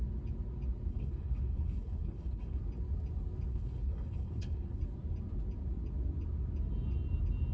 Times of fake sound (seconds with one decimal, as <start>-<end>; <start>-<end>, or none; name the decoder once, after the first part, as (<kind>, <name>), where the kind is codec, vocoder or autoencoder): 0.9-2.6 (codec, HILCodec); 3.5-4.8